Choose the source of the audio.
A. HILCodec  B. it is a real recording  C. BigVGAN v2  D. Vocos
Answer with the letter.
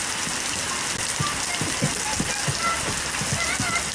B